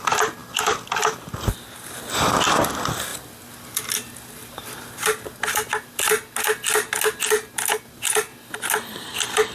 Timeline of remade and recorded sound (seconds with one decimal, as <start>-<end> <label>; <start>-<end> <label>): 0.0-9.5 recorded